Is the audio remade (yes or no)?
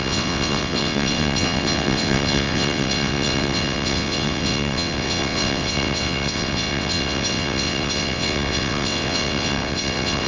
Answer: yes